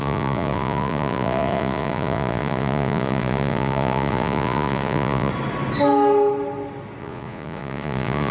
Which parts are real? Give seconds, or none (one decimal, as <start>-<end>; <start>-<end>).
5.3-7.0